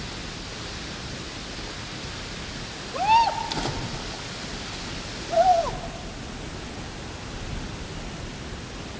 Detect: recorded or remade recorded